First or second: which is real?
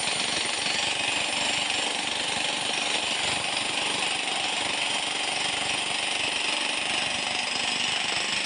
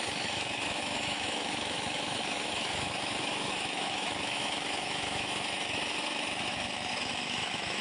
first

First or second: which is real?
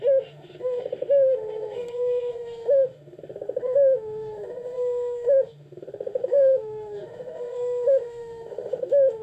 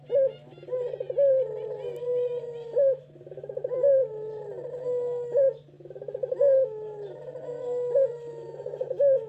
second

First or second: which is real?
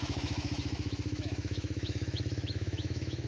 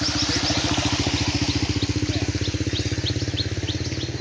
second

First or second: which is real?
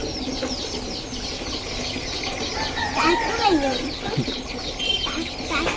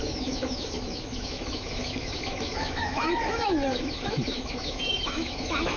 first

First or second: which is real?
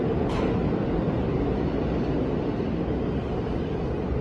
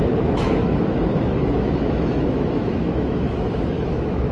first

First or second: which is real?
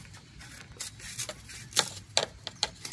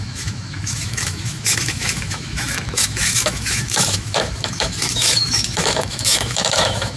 first